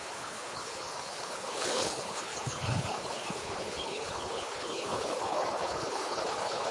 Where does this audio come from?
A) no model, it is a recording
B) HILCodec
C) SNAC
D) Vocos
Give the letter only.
B